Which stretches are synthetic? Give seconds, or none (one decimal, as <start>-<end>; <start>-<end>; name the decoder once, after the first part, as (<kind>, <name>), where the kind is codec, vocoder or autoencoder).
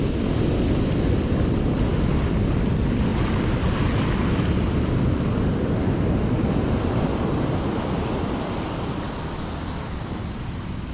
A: none